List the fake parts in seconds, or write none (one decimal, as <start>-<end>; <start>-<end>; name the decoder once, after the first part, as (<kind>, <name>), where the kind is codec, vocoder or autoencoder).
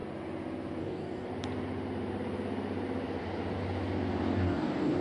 0.8-1.3 (codec, DAC); 4.3-5.0